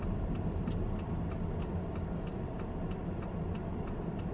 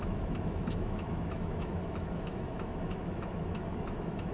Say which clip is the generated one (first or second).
second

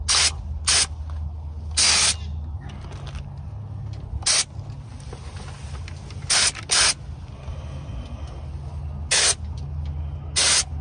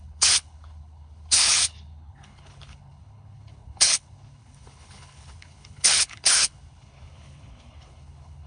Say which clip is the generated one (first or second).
second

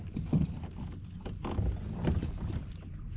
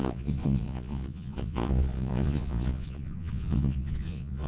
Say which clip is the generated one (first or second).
second